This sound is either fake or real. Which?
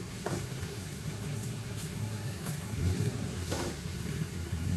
fake